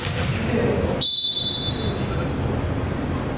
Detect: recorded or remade recorded